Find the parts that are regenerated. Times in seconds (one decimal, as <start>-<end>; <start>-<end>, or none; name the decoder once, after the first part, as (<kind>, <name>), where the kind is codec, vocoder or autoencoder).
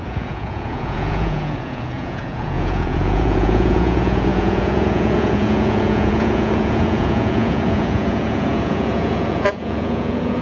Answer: 0.0-10.4 (vocoder, Vocos)